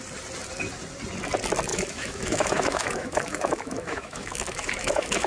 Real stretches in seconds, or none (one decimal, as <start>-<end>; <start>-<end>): 0.0-1.7